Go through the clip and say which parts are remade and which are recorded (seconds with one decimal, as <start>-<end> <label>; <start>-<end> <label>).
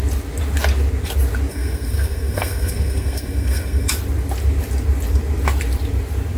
0.0-1.5 recorded; 1.5-3.9 remade; 3.9-6.4 recorded